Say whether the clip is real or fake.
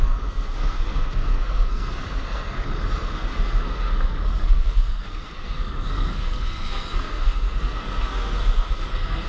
fake